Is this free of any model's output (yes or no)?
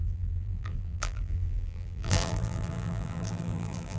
no